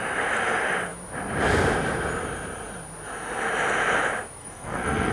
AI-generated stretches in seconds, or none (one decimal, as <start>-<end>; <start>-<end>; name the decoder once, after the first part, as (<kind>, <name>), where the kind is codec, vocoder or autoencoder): 4.4-5.1 (codec, SNAC)